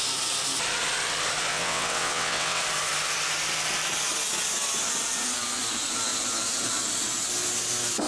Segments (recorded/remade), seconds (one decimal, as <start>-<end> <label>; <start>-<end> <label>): 0.0-1.5 recorded; 1.5-2.6 remade; 2.6-8.1 recorded

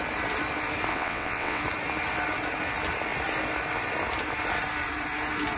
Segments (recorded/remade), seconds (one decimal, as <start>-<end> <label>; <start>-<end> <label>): 0.0-0.9 recorded; 0.9-1.6 remade; 1.6-5.6 recorded

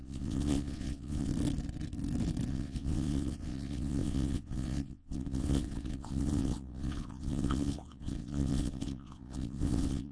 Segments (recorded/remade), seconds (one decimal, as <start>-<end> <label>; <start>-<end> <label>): 0.0-1.3 remade; 1.3-2.5 recorded; 2.5-10.1 remade

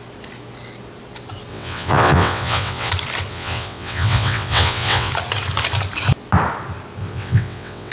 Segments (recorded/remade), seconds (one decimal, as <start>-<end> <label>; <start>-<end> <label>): 0.0-1.5 recorded; 1.5-2.9 remade; 2.9-3.3 recorded; 3.3-5.1 remade; 5.1-7.0 recorded; 7.0-7.9 remade